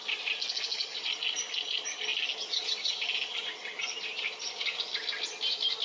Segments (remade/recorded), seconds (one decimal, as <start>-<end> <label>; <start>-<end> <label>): 0.0-5.8 recorded